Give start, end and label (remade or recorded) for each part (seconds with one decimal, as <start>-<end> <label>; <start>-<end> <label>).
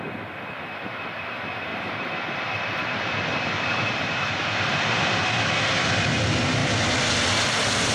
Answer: 0.0-1.7 recorded; 1.7-5.2 remade; 5.2-7.9 recorded